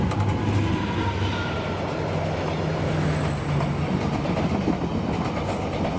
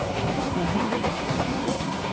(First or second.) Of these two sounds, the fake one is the second